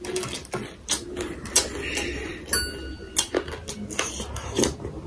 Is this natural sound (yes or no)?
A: yes